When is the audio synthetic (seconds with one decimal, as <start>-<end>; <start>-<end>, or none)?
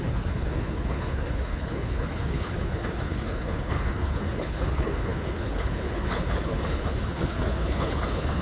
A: 0.0-8.4